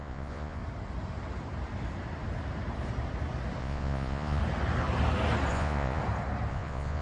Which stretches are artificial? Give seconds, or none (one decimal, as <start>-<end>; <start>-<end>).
0.0-0.6; 3.6-4.4; 5.5-6.0; 6.5-7.0

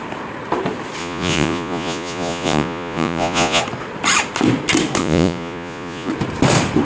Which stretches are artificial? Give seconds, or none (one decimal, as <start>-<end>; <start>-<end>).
1.0-3.6; 5.0-6.1

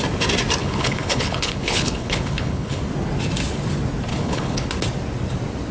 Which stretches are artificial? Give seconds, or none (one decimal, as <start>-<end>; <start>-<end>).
0.6-2.8; 4.1-4.7

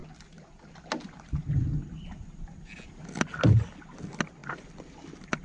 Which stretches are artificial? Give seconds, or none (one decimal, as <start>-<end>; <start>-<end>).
4.4-5.4

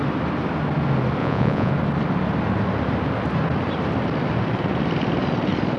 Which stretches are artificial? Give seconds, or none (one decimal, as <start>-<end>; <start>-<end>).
1.2-1.7

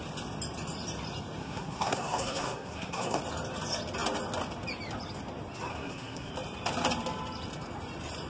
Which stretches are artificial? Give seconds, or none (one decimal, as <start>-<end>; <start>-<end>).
1.4-3.2; 5.7-6.3

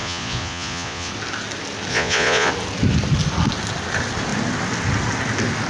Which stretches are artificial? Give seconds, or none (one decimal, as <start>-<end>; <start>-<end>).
0.0-1.1; 1.9-2.5